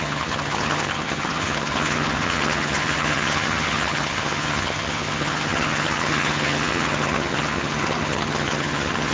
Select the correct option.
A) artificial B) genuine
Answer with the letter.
A